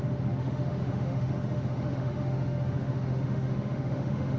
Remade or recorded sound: remade